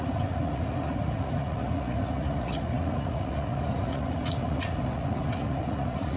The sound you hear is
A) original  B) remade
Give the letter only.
B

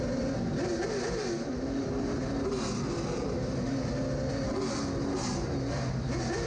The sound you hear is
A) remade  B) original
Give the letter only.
B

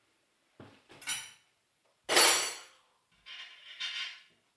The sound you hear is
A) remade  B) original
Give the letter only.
B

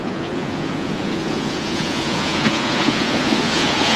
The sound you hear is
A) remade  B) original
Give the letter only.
A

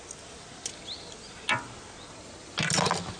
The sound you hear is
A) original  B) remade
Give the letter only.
A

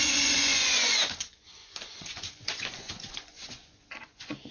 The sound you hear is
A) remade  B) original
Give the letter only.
A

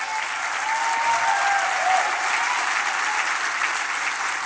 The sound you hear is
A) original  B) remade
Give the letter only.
A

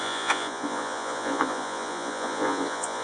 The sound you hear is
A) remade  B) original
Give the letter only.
A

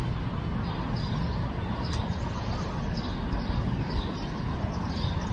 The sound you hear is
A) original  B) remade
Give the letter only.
A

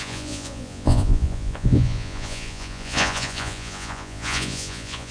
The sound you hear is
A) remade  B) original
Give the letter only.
A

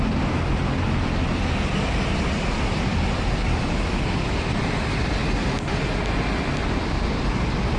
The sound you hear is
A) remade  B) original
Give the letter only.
B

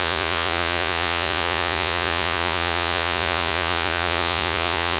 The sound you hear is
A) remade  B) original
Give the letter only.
A